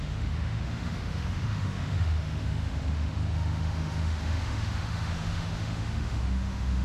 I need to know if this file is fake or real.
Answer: fake